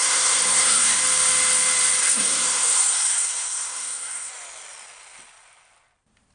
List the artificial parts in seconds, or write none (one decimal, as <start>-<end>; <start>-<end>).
0.0-1.0; 2.0-4.3